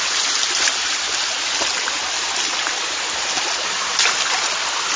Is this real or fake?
real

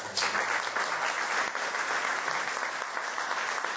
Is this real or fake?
real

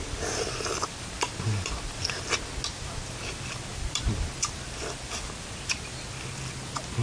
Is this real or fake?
real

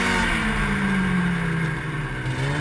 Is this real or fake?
real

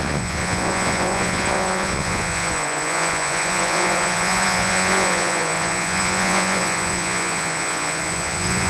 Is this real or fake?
fake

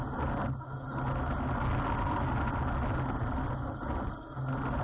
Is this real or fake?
real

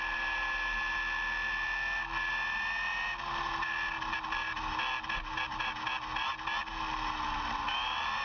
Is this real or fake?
real